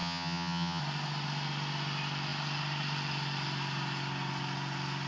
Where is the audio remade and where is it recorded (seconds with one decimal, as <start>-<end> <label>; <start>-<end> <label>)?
0.0-0.8 remade; 0.8-5.1 recorded